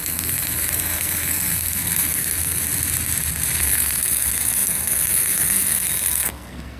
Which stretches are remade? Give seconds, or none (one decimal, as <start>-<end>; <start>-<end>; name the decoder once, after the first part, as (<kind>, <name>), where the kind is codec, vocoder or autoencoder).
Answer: 0.0-2.6 (codec, SNAC); 3.6-6.8